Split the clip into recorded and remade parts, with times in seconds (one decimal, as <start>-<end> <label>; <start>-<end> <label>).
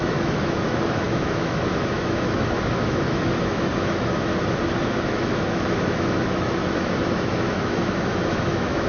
0.0-4.3 remade; 4.3-4.8 recorded; 4.8-8.9 remade